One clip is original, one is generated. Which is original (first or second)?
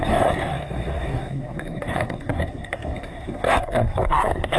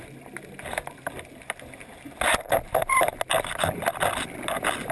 second